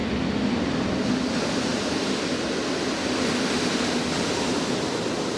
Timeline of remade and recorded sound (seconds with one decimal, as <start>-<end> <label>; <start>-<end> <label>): 0.0-5.4 recorded